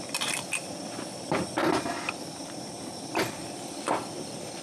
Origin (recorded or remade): remade